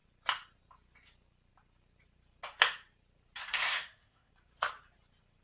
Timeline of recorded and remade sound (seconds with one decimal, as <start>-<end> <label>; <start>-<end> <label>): 0.0-3.4 recorded; 3.4-4.3 remade; 4.3-5.4 recorded